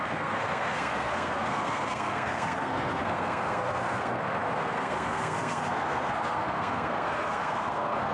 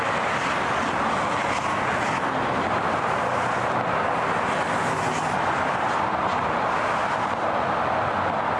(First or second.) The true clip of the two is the second